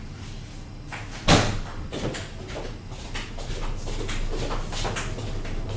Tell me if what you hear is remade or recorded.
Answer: recorded